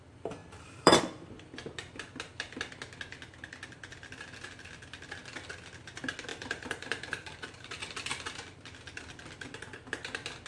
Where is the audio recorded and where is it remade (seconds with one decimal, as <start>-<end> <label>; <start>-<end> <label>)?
0.0-0.4 recorded; 0.4-1.0 remade; 1.0-6.3 recorded; 6.3-7.8 remade; 7.8-10.5 recorded

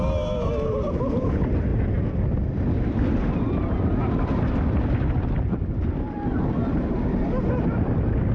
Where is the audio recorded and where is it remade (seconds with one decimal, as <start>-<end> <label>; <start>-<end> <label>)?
0.0-8.3 recorded

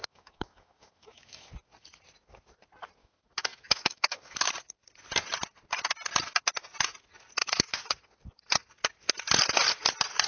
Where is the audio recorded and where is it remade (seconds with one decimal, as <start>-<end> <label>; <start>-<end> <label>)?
0.0-1.5 remade; 1.5-3.0 recorded; 3.0-4.5 remade; 4.5-7.4 recorded; 7.4-8.0 remade; 8.0-10.3 recorded

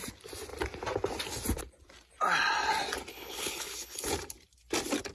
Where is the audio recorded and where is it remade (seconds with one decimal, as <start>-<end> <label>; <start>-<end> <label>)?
0.0-3.1 recorded; 3.1-4.1 remade; 4.1-5.1 recorded

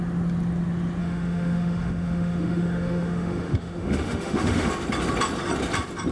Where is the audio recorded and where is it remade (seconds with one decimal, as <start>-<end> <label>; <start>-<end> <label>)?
0.0-1.0 recorded; 1.0-4.7 remade; 4.7-6.1 recorded

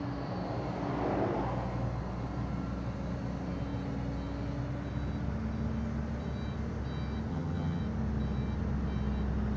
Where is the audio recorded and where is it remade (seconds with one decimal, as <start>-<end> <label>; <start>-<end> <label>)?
0.0-7.3 recorded; 7.3-7.8 remade; 7.8-9.6 recorded

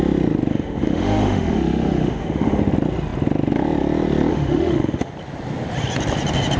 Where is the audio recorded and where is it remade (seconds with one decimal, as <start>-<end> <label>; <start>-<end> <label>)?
0.0-0.5 recorded; 0.5-2.6 remade; 2.6-4.3 recorded; 4.3-5.1 remade; 5.1-6.6 recorded